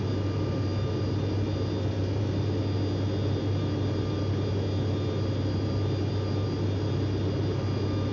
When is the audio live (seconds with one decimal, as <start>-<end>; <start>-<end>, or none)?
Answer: 0.0-8.1